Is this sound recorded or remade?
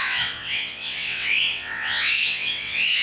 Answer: remade